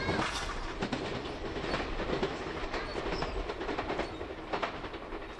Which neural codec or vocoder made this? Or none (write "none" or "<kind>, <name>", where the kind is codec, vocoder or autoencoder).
none